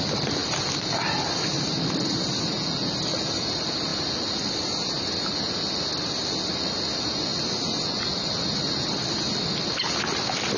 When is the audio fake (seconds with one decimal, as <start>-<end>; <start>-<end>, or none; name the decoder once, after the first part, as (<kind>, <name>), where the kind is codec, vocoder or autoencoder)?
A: none